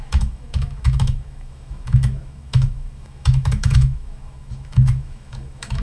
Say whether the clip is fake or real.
fake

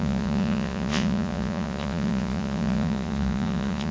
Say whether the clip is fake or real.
fake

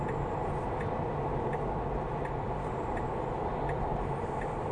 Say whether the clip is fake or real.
real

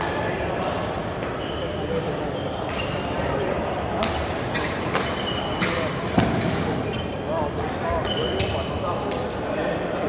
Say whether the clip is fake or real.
fake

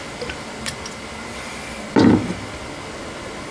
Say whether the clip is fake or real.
real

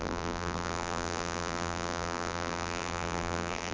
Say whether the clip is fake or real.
fake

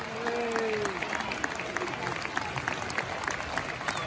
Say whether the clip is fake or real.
real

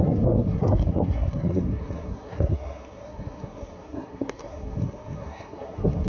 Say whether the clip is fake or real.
fake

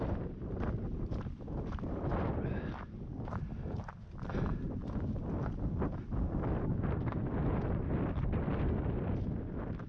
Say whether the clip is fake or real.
real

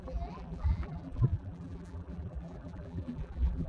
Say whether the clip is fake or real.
fake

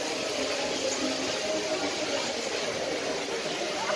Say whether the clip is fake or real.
real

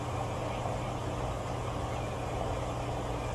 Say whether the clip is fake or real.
real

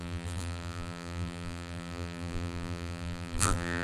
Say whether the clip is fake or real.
fake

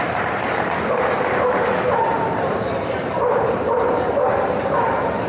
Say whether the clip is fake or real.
fake